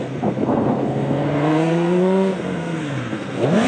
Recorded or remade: remade